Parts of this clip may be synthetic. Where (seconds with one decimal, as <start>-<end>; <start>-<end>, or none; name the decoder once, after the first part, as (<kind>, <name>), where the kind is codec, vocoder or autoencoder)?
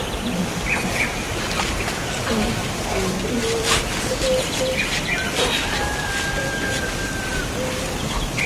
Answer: 0.0-2.6 (vocoder, BigVGAN v2); 6.4-7.3